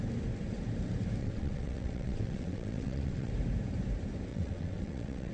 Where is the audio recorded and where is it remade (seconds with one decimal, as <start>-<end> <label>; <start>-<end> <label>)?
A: 0.0-1.2 recorded; 1.2-3.3 remade; 3.3-4.3 recorded; 4.3-5.3 remade